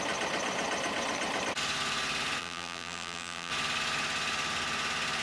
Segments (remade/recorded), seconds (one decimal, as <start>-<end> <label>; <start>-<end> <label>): 0.0-2.4 recorded; 2.4-3.5 remade; 3.5-5.2 recorded